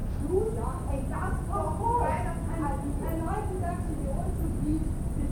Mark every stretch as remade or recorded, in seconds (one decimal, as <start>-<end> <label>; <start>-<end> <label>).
0.0-0.7 recorded; 0.7-1.6 remade; 1.6-3.8 recorded; 3.8-5.3 remade